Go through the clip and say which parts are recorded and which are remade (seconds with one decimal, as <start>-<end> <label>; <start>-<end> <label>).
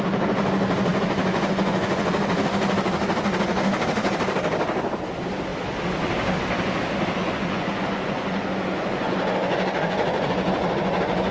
0.0-0.9 recorded; 0.9-2.1 remade; 2.1-7.2 recorded; 7.2-11.3 remade